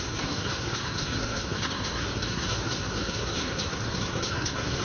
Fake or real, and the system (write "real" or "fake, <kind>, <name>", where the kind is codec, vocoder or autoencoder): fake, codec, SNAC